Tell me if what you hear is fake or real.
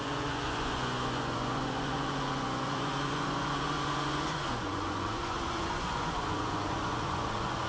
fake